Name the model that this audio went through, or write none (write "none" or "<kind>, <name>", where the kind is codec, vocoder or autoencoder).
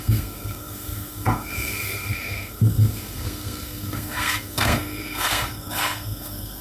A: codec, SNAC